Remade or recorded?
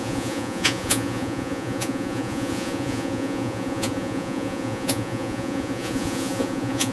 remade